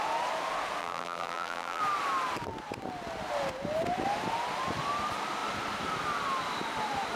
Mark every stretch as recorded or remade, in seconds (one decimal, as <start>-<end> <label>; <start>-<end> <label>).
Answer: 0.0-0.8 recorded; 0.8-1.8 remade; 1.8-7.2 recorded